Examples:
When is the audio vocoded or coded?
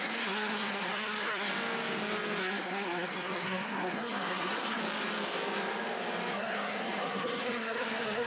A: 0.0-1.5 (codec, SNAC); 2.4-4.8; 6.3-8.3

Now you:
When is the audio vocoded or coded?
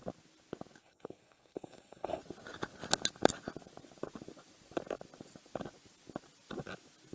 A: 0.8-2.2 (codec, SNAC)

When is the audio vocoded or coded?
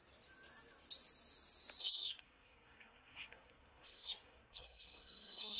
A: 1.8-5.6 (codec, SNAC)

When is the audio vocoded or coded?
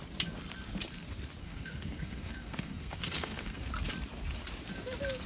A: 1.4-3.7 (codec, SNAC)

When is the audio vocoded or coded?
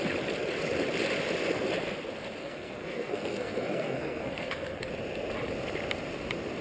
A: 2.4-4.9 (codec, SNAC)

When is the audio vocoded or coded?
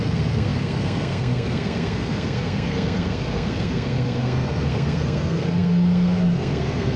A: 0.0-7.0 (codec, SNAC)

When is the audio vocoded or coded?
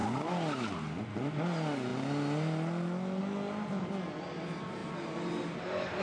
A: none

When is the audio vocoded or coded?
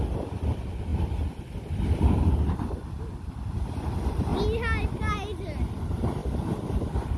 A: none